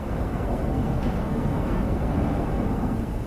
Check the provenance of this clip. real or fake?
fake